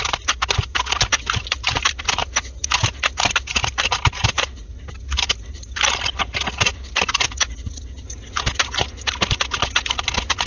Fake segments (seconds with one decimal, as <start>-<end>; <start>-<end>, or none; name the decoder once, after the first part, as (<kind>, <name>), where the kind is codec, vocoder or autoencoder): none